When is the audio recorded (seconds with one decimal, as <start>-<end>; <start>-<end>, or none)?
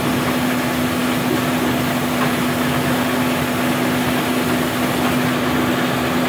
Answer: 0.0-6.3